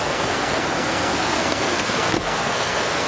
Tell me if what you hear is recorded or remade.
remade